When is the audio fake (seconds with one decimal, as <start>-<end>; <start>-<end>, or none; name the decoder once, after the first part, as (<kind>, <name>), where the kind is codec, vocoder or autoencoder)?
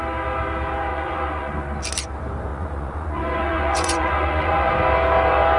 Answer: 0.9-1.8 (vocoder, Vocos); 2.5-4.7